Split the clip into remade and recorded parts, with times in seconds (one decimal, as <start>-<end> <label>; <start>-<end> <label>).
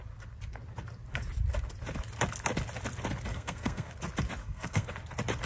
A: 0.0-3.3 recorded; 3.3-3.9 remade; 3.9-4.4 recorded; 4.4-4.9 remade; 4.9-5.5 recorded